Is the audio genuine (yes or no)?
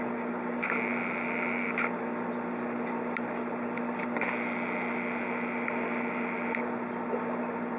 yes